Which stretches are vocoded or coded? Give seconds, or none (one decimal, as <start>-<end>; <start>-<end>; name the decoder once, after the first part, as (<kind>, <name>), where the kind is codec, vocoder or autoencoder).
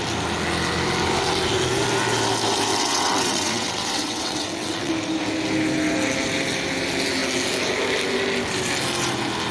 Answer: 2.7-4.9 (vocoder, WaveNeXt)